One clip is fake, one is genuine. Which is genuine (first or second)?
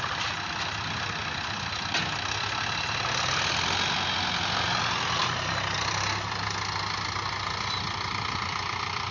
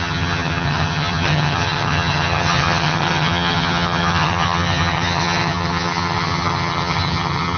first